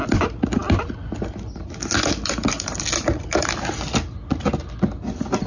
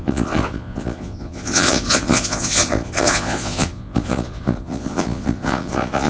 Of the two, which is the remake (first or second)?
second